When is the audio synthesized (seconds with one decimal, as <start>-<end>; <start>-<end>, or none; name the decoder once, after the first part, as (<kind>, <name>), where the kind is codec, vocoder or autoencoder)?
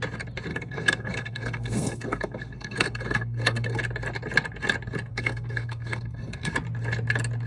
0.5-3.8 (codec, SNAC); 5.1-6.5